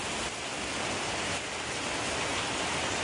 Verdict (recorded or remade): recorded